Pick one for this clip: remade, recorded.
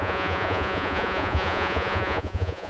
remade